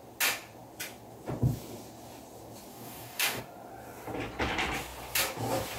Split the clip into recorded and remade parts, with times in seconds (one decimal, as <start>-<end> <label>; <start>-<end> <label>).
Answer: 0.0-2.7 recorded; 2.7-3.4 remade; 3.4-5.8 recorded